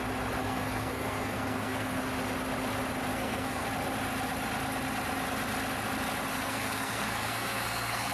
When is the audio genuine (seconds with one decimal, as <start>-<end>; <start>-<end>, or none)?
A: 0.0-0.4; 2.0-3.1; 3.7-6.3